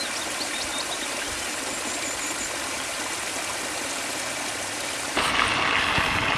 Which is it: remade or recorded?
recorded